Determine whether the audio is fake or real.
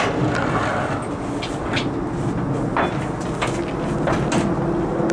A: real